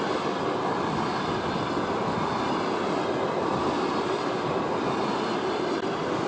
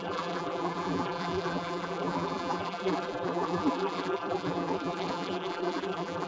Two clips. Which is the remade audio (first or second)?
second